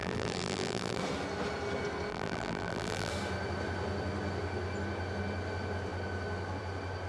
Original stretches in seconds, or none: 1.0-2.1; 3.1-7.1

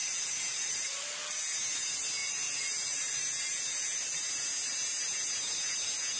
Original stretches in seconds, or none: 1.1-2.2; 4.3-6.2

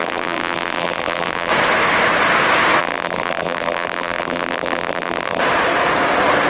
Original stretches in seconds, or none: 1.5-2.8; 5.4-6.5

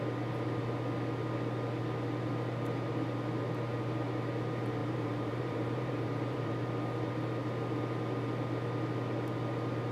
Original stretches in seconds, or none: 0.0-4.8; 6.5-9.9

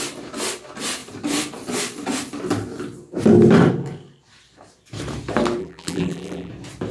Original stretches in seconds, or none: 0.0-5.6; 6.5-6.9

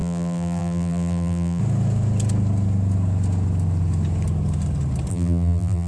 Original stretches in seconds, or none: 1.6-5.1

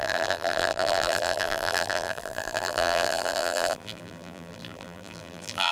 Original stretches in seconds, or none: none